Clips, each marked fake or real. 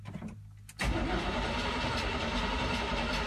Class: real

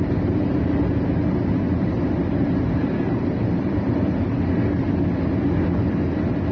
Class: real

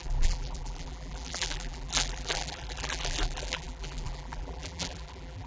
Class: fake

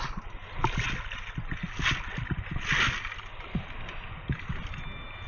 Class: real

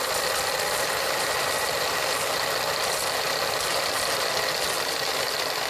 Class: real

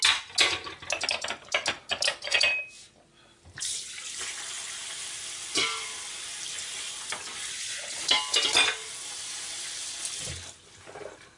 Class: real